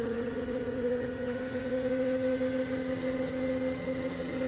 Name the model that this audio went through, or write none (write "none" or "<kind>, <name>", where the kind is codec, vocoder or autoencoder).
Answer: vocoder, HiFi-GAN